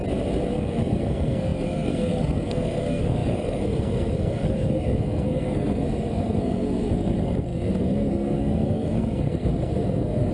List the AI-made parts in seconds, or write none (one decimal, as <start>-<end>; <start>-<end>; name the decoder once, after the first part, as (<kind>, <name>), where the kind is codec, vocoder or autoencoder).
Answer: 0.5-10.3 (codec, SNAC)